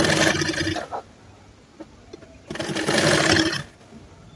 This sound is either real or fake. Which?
real